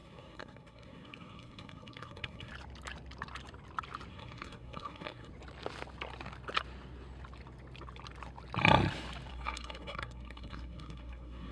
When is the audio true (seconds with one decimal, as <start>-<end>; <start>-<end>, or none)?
2.5-4.1; 5.3-9.3